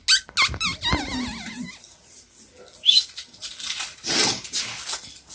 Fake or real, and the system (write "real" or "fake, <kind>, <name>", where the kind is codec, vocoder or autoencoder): real